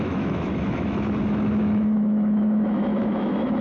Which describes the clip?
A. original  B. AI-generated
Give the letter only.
B